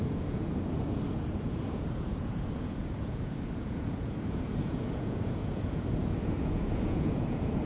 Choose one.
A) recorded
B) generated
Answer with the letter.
B